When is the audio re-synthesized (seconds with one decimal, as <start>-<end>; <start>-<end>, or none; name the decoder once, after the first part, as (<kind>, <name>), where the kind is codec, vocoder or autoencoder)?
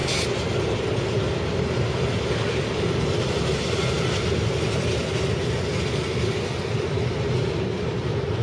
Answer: none